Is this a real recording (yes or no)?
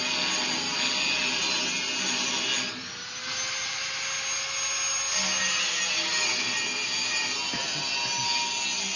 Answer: yes